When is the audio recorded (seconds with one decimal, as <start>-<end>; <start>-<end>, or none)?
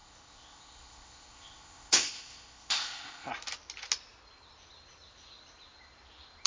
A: 3.3-6.5